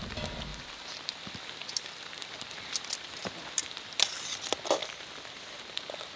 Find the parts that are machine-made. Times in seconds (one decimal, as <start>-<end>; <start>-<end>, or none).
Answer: 0.5-4.2; 4.8-5.8